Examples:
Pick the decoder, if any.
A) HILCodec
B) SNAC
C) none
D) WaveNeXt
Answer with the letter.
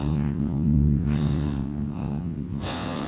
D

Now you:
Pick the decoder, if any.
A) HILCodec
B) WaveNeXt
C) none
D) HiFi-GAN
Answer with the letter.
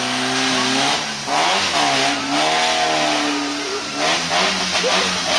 C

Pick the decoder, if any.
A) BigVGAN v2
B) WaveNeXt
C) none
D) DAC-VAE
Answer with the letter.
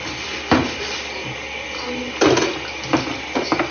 C